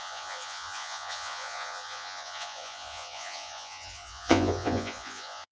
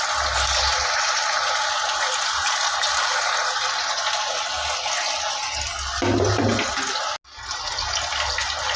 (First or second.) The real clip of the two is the second